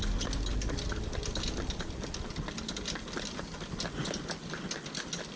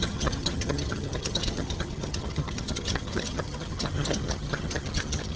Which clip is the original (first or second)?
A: first